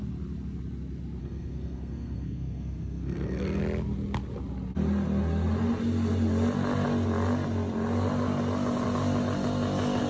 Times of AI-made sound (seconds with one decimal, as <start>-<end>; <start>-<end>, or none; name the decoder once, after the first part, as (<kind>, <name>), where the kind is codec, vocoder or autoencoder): 1.2-3.6 (codec, SNAC)